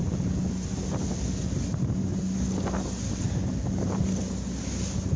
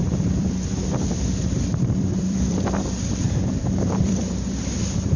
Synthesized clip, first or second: second